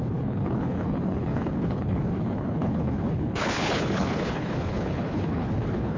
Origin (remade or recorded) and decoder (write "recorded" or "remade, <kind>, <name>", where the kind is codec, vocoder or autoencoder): remade, codec, HILCodec